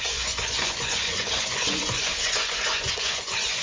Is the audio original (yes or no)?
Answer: no